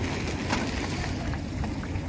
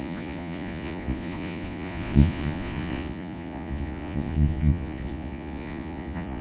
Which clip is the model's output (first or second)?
second